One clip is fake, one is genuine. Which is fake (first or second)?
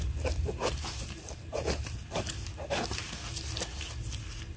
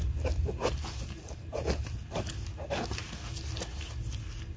first